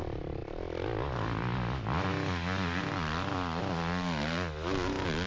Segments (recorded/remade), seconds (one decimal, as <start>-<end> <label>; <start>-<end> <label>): 0.0-5.3 recorded